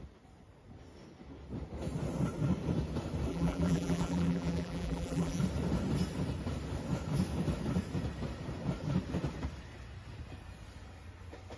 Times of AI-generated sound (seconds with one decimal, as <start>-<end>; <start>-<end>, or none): 3.3-5.4